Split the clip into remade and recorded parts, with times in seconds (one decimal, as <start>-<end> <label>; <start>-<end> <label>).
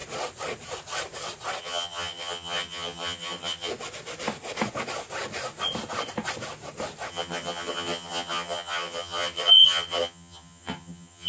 0.0-1.6 recorded; 1.6-3.7 remade; 3.7-7.1 recorded; 7.1-11.3 remade